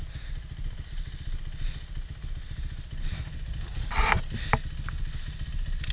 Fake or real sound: real